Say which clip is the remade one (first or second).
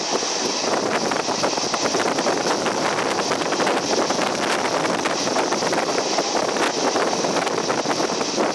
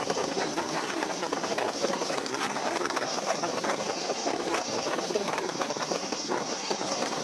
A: second